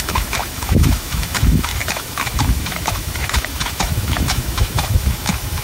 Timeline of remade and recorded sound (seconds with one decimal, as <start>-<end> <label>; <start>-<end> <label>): 0.0-5.6 remade